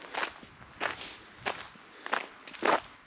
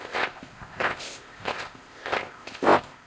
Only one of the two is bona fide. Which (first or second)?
first